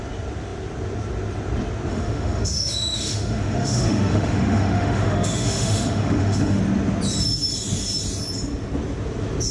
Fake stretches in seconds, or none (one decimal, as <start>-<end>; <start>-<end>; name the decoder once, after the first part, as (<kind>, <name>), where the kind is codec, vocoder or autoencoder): 1.9-6.6 (autoencoder, DAC-VAE)